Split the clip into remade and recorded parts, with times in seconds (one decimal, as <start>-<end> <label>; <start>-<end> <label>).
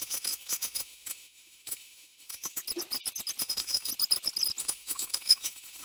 0.0-2.6 remade; 2.6-3.4 recorded; 3.4-3.9 remade; 3.9-4.6 recorded; 4.6-5.8 remade